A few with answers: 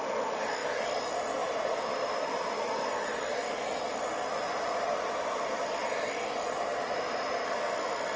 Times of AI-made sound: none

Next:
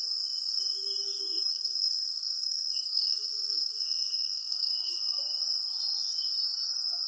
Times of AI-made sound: 1.5-5.2 (codec, SNAC)

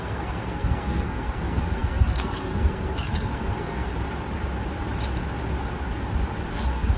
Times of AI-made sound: 0.0-3.9 (codec, SNAC); 6.5-7.0